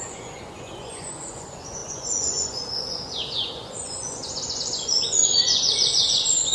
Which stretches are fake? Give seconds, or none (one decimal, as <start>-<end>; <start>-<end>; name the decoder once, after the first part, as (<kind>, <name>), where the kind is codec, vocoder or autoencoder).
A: 0.0-6.5 (vocoder, Vocos)

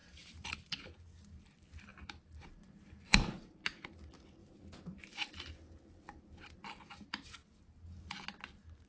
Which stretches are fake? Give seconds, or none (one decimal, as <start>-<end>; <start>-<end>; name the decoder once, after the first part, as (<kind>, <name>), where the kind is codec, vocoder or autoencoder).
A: 0.0-1.0 (vocoder, BigVGAN v2); 1.9-3.6; 4.4-5.5

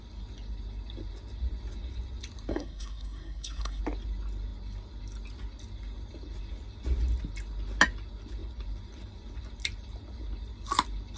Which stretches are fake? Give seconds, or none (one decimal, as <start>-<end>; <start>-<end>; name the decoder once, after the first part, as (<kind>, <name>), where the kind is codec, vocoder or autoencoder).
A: 2.5-3.8 (codec, SNAC)

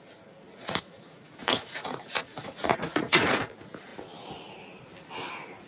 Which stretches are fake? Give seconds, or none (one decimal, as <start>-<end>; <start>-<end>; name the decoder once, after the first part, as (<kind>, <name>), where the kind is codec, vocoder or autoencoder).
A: 0.5-3.4 (vocoder, Vocos)

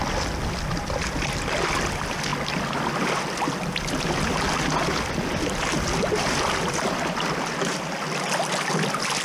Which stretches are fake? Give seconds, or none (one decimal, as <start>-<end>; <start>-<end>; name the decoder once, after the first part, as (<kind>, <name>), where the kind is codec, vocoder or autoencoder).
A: none

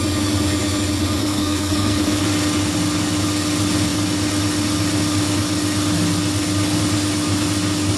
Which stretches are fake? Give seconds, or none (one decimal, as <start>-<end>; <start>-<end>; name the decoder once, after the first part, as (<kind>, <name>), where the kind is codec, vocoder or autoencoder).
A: 1.2-2.2 (codec, SNAC)